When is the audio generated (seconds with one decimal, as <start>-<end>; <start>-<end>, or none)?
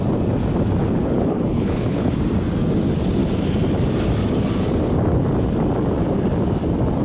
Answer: 0.8-2.2